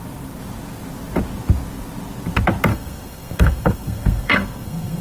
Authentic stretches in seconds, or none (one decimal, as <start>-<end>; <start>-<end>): 0.0-2.7